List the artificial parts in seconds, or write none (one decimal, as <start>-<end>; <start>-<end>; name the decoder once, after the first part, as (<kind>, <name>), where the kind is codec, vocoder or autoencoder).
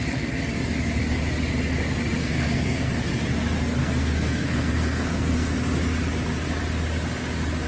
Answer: 2.2-2.9 (codec, SNAC); 3.8-5.5